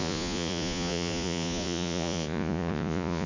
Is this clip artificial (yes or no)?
yes